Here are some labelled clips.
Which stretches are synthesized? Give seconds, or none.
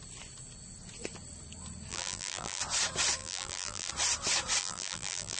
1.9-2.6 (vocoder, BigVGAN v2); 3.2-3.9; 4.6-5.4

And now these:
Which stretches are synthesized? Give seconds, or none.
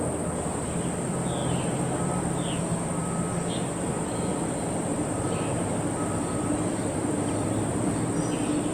1.4-2.2 (vocoder, BigVGAN v2); 4.3-8.1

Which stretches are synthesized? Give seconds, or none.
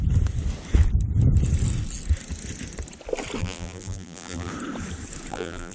3.4-4.5 (vocoder, BigVGAN v2); 5.3-5.7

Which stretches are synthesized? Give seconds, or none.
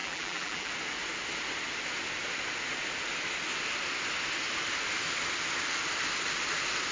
0.0-0.7 (vocoder, BigVGAN v2)